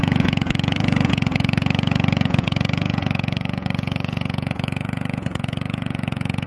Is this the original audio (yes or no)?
no